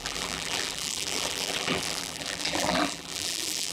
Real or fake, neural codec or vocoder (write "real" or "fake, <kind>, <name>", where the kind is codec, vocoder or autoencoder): fake, vocoder, BigVGAN v2